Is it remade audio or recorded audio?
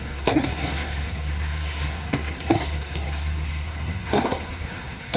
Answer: remade